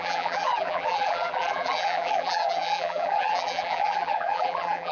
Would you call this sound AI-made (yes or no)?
yes